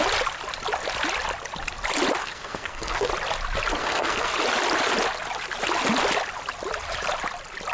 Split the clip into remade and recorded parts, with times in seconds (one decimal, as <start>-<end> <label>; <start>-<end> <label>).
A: 0.0-2.2 recorded; 2.2-3.1 remade; 3.1-3.8 recorded; 3.8-4.3 remade; 4.3-7.7 recorded